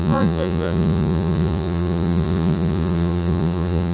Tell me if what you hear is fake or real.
fake